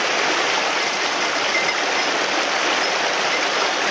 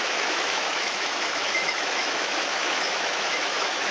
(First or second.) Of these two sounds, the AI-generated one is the second